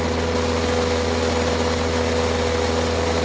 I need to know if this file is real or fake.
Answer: real